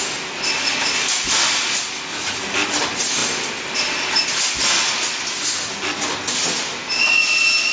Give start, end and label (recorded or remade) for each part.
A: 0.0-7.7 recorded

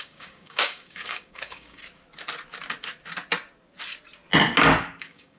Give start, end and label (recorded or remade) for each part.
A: 0.0-1.8 remade; 1.8-5.0 recorded; 5.0-5.4 remade

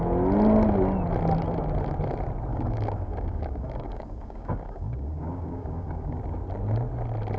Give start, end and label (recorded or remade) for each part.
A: 0.0-2.5 recorded; 2.5-6.2 remade; 6.2-7.4 recorded

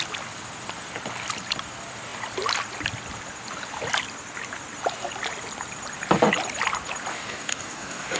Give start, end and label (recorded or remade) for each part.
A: 0.0-7.1 recorded; 7.1-8.2 remade

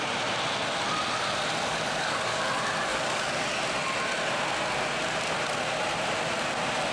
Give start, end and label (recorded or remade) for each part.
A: 0.0-1.7 recorded; 1.7-2.4 remade; 2.4-2.9 recorded; 2.9-3.5 remade; 3.5-6.9 recorded

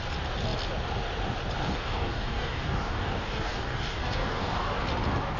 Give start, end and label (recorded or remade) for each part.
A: 0.0-1.6 recorded; 1.6-4.8 remade; 4.8-5.4 recorded